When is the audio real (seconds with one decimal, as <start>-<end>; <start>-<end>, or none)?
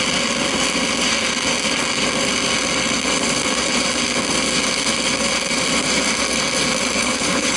0.0-7.0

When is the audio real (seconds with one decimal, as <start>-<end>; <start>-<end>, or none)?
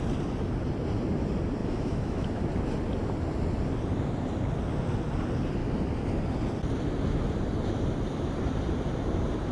0.0-1.6; 2.4-9.5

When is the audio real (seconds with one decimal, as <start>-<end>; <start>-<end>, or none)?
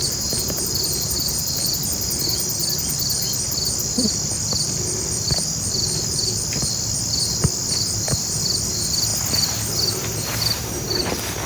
1.7-11.5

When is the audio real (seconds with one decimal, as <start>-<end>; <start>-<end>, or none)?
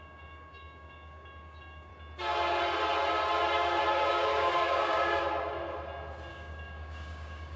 1.9-4.1; 5.2-6.3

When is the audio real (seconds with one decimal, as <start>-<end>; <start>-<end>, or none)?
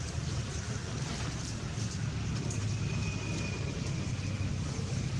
0.0-5.2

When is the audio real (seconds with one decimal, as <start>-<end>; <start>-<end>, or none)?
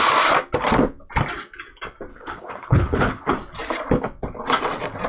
0.0-2.1; 3.3-5.1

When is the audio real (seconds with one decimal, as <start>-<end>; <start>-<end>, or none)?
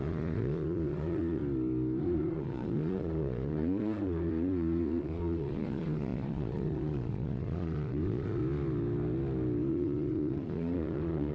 1.4-2.0; 8.4-9.7